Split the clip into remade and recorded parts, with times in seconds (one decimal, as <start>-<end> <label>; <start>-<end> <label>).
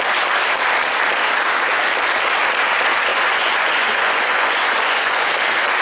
0.0-3.1 recorded; 3.1-5.3 remade; 5.3-5.8 recorded